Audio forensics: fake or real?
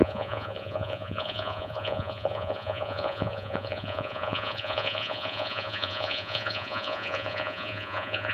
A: fake